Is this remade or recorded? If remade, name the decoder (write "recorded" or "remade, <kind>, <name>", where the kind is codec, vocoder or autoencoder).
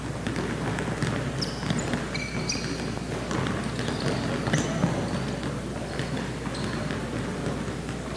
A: recorded